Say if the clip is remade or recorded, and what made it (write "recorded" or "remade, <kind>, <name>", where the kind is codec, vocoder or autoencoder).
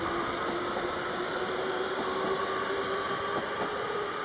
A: recorded